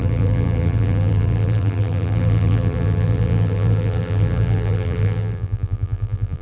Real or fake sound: fake